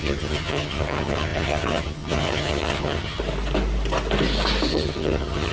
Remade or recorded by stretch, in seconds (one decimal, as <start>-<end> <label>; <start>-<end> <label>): 0.0-3.2 remade; 3.2-4.7 recorded; 4.7-5.5 remade